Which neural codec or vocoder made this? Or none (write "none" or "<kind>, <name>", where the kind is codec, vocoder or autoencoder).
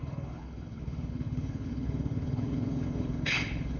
codec, HILCodec